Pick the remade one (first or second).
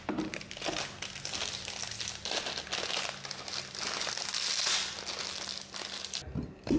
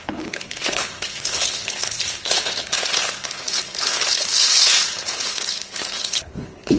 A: second